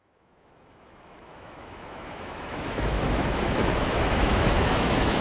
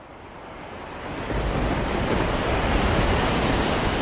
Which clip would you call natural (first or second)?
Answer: second